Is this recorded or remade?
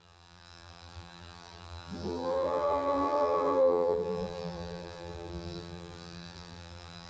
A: remade